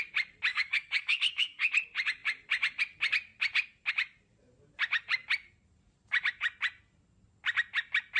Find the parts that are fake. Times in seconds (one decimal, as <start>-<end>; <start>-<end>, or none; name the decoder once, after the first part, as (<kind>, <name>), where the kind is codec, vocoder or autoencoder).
0.5-1.7 (codec, DAC)